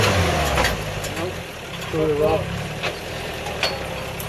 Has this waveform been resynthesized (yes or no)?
no